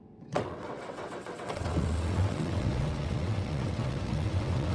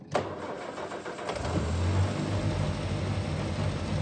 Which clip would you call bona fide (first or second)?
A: second